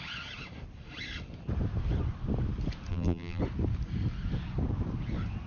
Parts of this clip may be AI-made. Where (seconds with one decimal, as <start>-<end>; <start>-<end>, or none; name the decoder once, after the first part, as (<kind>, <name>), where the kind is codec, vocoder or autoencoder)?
2.9-3.4 (vocoder, BigVGAN v2)

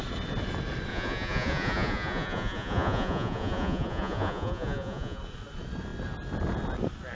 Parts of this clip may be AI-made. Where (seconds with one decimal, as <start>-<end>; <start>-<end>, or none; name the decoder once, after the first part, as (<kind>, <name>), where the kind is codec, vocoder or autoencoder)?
0.9-5.2 (vocoder, Vocos)